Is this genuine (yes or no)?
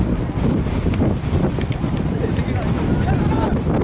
yes